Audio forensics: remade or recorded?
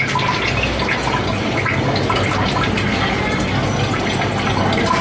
recorded